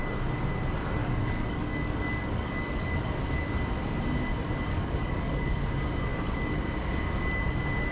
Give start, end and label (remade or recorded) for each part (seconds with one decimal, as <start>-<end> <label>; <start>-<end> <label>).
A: 0.0-1.0 recorded; 1.0-3.0 remade; 3.0-4.7 recorded; 4.7-5.6 remade; 5.6-6.1 recorded; 6.1-6.6 remade; 6.6-7.9 recorded